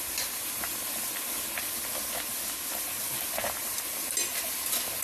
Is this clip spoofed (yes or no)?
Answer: no